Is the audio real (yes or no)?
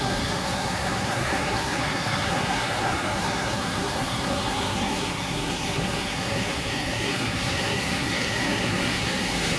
no